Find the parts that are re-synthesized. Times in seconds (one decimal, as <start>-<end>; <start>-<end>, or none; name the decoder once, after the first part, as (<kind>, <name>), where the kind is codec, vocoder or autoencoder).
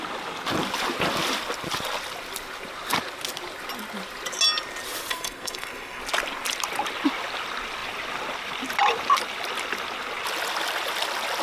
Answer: 5.1-6.0 (codec, SNAC)